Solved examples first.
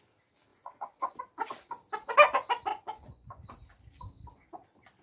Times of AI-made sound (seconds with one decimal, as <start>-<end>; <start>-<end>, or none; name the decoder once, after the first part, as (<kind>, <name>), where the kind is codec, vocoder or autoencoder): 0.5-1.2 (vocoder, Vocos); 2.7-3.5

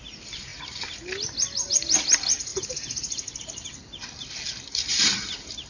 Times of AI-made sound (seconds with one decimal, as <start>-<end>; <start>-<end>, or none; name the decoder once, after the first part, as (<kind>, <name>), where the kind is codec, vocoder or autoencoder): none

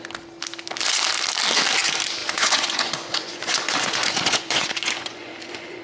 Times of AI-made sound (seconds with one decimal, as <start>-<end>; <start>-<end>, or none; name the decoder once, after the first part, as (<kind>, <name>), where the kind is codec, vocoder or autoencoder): 2.2-5.8 (vocoder, Vocos)

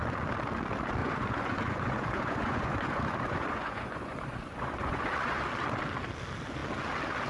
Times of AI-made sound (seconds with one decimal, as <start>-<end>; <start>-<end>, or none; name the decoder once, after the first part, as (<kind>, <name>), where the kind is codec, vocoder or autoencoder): 1.0-5.4 (vocoder, Vocos)